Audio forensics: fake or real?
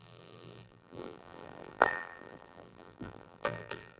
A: fake